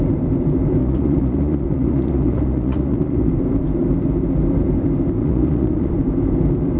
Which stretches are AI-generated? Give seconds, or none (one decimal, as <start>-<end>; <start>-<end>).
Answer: 0.8-3.3; 5.2-5.9